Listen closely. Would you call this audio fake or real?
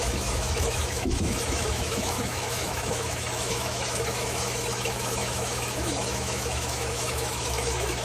fake